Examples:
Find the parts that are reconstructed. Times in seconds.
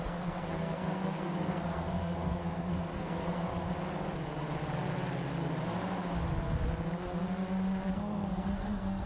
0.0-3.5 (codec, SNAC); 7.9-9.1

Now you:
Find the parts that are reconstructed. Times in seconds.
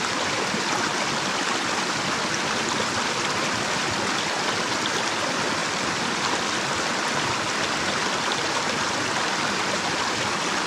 none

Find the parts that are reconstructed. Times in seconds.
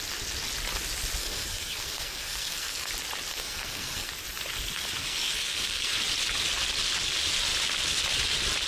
1.2-2.9 (codec, SNAC); 3.3-4.1; 5.0-6.0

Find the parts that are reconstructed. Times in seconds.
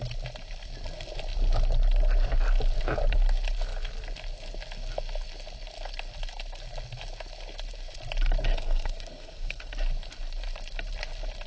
8.5-9.7 (codec, SNAC)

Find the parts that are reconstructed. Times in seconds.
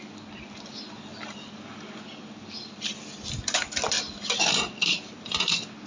none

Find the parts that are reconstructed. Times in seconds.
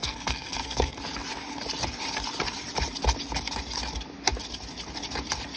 0.0-1.0 (codec, SNAC)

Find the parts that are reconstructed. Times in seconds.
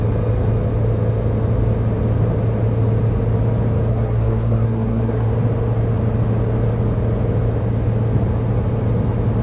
3.9-5.3 (codec, SNAC)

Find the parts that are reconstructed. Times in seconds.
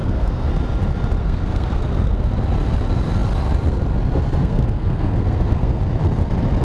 0.0-0.5 (codec, SNAC); 1.2-2.3; 4.4-5.8